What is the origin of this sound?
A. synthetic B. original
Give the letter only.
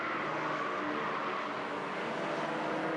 B